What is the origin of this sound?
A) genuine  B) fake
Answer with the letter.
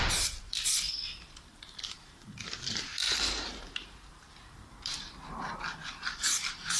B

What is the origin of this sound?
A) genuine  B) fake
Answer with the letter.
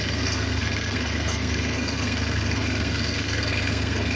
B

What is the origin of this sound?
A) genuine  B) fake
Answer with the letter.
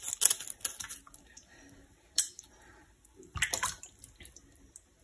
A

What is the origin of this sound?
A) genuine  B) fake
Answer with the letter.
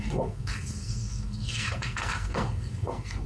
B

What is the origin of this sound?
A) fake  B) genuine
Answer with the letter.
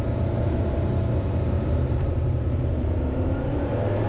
A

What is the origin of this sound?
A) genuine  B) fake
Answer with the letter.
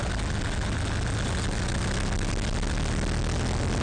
A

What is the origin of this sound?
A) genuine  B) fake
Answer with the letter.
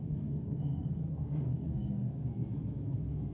B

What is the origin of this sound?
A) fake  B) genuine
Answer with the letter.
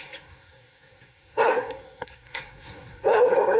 A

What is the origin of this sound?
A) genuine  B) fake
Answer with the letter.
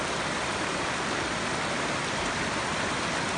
A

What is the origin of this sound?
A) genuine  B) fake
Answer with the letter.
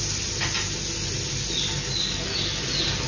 A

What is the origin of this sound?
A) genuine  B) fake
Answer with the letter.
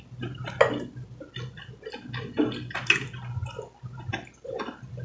A